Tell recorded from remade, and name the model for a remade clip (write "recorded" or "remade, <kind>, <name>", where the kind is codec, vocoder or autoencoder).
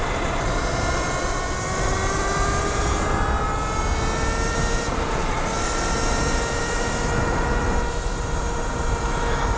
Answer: recorded